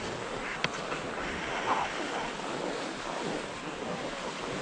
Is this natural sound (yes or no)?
yes